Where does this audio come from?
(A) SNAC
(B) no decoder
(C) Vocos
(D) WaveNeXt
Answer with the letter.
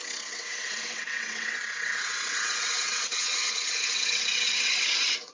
D